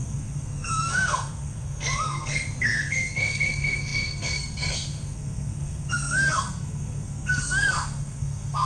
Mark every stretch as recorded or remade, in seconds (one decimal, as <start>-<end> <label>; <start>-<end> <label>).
0.0-8.7 remade